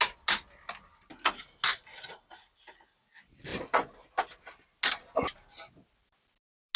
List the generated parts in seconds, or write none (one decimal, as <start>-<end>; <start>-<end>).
none